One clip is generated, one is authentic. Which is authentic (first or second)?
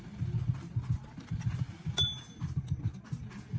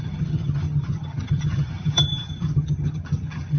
first